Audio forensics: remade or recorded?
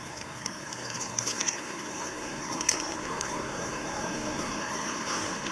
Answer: remade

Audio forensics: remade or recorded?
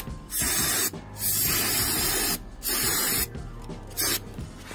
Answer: recorded